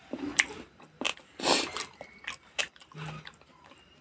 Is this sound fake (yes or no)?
no